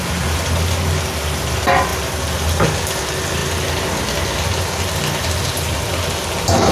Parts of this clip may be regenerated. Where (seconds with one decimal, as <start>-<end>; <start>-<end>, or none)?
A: none

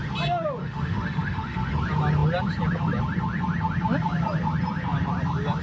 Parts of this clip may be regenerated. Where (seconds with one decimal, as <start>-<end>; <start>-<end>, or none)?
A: 0.6-1.7

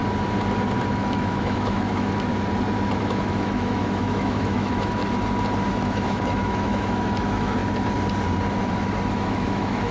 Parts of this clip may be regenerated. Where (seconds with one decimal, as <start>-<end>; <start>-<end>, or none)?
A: 0.9-2.3; 3.0-5.0; 5.7-7.6; 9.1-9.9